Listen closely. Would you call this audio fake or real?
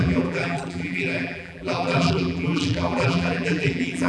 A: fake